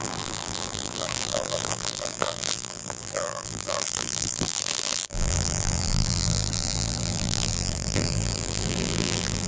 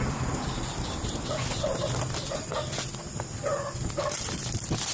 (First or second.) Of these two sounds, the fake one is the first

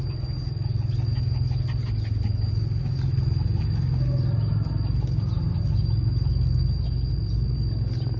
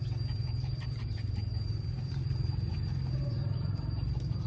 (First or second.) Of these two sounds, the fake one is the second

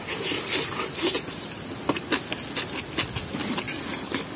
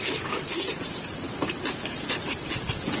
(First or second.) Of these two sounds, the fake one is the second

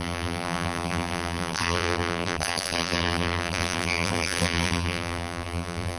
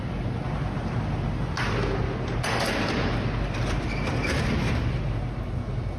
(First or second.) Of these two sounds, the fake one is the first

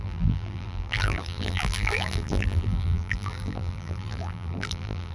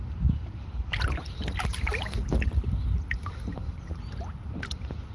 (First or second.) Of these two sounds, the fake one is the first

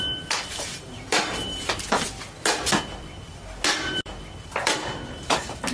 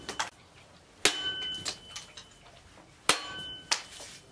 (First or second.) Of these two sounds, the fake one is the first